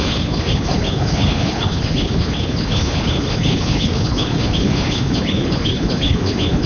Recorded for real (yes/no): no